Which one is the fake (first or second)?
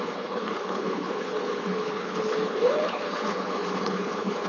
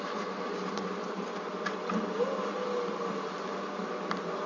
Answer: first